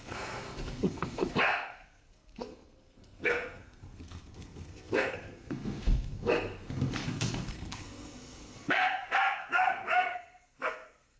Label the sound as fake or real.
fake